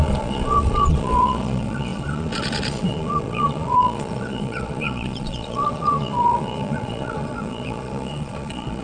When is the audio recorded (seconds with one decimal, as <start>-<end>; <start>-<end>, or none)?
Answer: none